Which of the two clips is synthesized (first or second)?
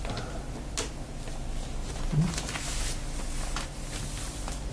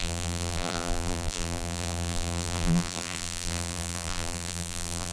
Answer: second